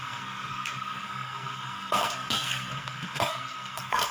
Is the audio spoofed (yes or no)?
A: yes